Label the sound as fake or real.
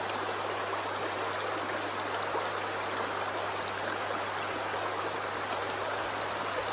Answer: real